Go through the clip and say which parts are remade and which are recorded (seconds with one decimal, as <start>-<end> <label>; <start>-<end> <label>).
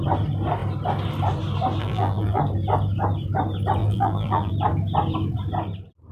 0.0-1.8 recorded; 1.8-2.4 remade; 2.4-3.8 recorded; 3.8-4.5 remade; 4.5-6.1 recorded